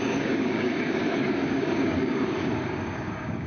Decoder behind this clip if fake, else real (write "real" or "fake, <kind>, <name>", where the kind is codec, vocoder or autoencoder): fake, codec, DAC